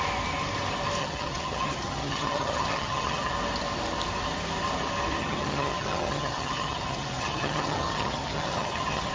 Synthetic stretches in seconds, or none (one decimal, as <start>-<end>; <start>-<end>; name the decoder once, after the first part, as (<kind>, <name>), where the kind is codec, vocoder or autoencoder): 1.0-3.3 (vocoder, HiFi-GAN); 5.2-9.1